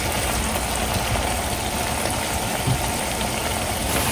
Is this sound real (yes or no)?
yes